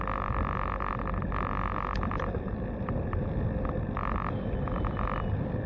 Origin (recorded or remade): recorded